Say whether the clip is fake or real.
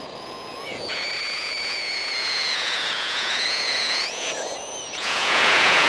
fake